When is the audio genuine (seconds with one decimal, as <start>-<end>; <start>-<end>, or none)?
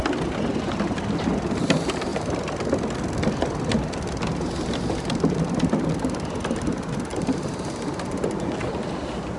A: 0.0-7.1; 7.7-8.6